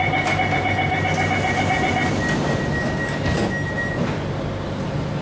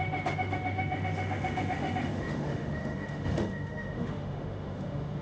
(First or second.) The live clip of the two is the first